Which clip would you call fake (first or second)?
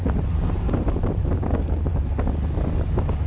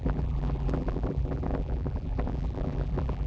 second